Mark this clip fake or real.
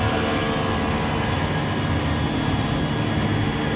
real